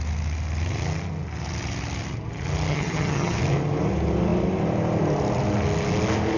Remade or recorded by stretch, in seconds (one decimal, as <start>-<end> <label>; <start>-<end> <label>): 0.0-2.7 recorded; 2.7-3.4 remade; 3.4-6.4 recorded